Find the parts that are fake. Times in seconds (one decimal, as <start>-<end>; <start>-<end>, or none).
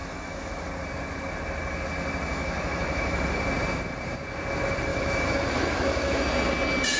0.0-0.7; 2.3-3.4; 4.9-6.2